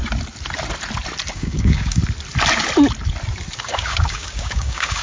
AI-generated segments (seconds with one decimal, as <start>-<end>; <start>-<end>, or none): 1.3-2.0; 3.6-5.0